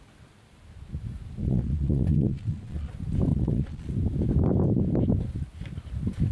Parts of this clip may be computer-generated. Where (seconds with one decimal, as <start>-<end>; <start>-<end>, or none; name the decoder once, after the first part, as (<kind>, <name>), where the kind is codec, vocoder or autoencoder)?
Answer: 1.4-2.9 (vocoder, Vocos); 3.3-3.9